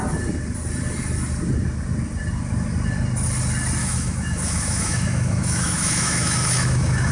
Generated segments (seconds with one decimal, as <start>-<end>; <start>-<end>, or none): 3.8-7.1

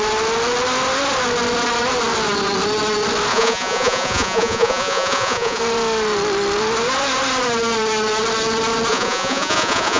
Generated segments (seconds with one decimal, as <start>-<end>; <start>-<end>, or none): 3.3-5.6; 8.9-10.0

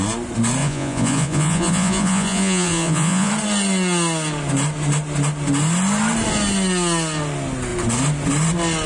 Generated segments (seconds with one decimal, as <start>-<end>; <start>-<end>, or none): 0.6-3.3

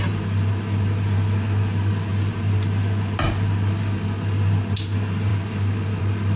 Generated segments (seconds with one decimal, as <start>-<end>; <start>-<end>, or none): none

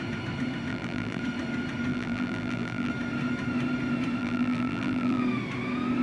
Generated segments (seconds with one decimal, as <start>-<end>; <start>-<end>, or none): 0.7-1.2; 1.9-2.9; 4.2-5.2